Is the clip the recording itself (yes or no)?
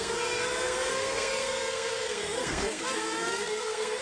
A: no